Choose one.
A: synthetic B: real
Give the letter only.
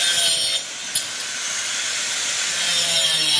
B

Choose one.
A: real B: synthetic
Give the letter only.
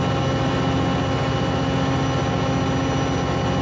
A